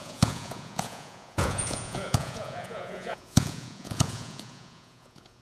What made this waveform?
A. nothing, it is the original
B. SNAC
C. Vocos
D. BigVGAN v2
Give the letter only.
C